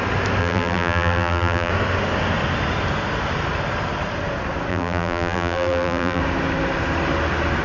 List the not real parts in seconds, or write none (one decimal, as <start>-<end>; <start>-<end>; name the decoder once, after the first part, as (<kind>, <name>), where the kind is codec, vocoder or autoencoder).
0.4-1.7 (vocoder, BigVGAN v2); 4.7-6.2